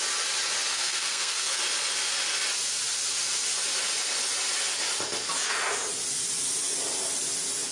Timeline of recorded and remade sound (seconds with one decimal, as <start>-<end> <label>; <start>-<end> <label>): 0.0-0.7 recorded; 0.7-1.6 remade; 1.6-7.7 recorded